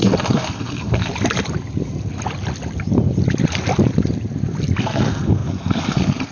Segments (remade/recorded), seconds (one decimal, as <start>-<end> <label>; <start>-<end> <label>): 0.0-1.1 remade; 1.1-4.8 recorded; 4.8-6.3 remade